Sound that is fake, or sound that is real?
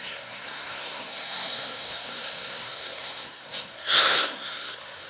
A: fake